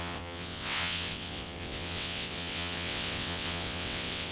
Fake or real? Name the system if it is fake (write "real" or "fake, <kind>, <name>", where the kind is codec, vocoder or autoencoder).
fake, vocoder, WaveNeXt